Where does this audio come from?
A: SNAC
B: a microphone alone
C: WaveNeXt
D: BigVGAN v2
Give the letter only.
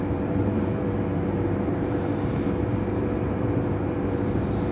D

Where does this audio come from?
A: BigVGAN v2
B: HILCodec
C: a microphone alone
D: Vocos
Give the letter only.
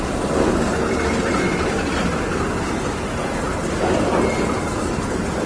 C